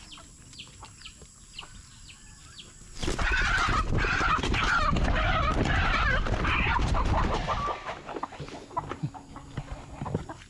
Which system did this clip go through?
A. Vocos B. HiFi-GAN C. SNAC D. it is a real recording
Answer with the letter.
D